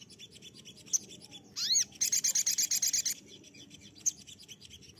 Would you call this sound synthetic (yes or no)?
no